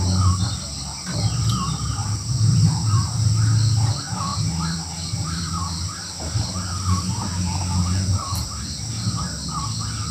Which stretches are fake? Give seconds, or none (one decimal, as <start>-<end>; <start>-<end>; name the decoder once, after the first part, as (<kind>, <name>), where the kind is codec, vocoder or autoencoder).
2.0-3.3 (vocoder, BigVGAN v2); 4.3-9.6